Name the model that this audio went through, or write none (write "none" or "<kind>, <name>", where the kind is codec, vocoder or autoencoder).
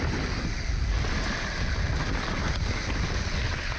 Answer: none